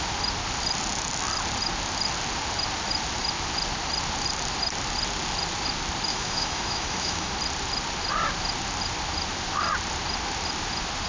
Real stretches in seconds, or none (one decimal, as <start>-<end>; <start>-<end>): 0.0-6.1; 7.3-11.1